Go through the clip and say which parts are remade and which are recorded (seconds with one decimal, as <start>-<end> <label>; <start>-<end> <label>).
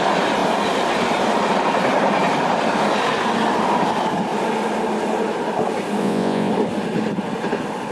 0.0-6.0 recorded; 6.0-6.5 remade; 6.5-7.9 recorded